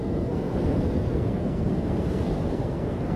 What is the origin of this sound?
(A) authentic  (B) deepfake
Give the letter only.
B